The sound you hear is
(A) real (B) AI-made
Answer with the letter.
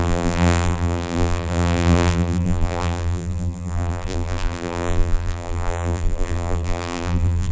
B